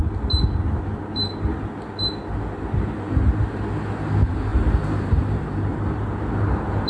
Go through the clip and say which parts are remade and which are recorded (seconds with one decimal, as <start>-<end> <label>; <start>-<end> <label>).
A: 0.0-4.5 recorded; 4.5-6.4 remade; 6.4-6.9 recorded